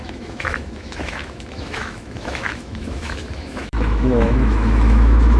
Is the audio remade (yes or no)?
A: yes